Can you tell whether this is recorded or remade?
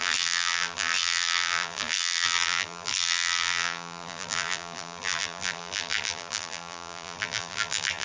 remade